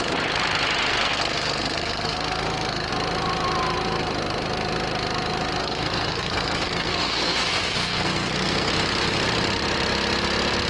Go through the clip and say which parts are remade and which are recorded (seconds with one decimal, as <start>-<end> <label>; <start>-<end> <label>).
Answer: 0.0-0.9 recorded; 0.9-2.9 remade; 2.9-5.6 recorded; 5.6-8.7 remade; 8.7-10.7 recorded